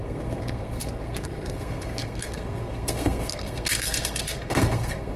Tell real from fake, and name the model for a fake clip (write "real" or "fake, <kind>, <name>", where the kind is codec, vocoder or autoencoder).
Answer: fake, codec, SNAC